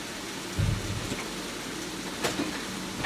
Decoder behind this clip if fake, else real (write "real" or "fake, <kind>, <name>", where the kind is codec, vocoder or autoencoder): real